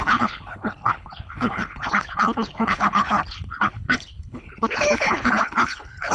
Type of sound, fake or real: fake